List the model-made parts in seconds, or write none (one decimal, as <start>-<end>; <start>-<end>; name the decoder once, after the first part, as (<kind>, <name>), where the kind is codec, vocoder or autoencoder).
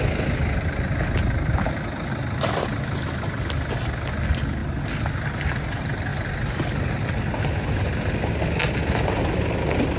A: none